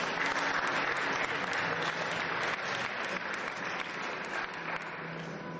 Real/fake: real